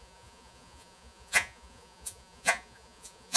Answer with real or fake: fake